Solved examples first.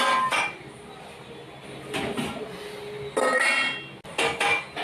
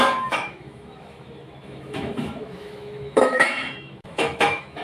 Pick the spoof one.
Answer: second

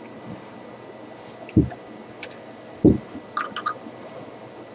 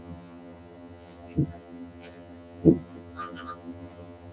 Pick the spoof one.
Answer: second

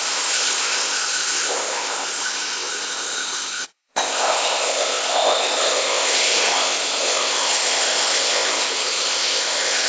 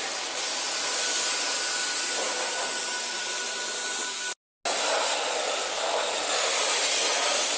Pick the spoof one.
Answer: first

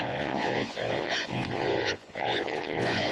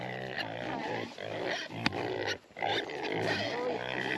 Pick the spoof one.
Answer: first